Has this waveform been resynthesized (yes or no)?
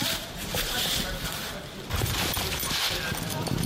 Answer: yes